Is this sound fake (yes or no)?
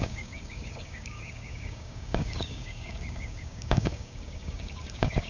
yes